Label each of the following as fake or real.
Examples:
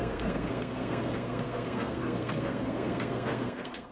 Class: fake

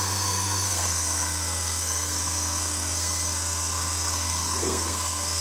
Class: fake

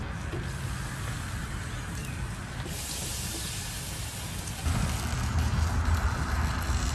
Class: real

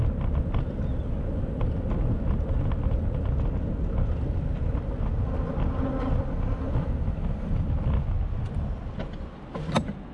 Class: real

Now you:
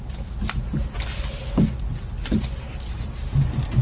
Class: real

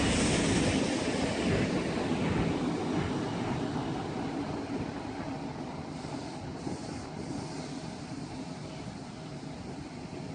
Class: real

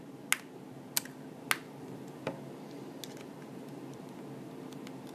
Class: real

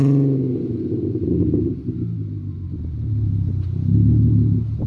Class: real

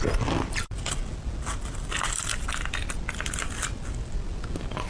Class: real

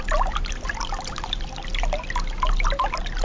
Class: real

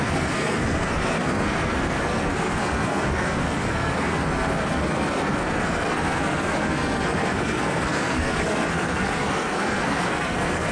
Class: fake